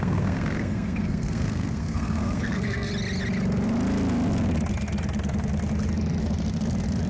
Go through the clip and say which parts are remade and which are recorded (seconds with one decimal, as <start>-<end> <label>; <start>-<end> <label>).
0.0-2.9 remade; 2.9-7.1 recorded